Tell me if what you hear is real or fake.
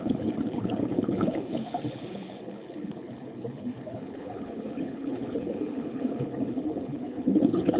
fake